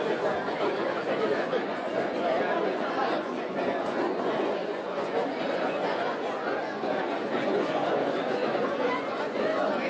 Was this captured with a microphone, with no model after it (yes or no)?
no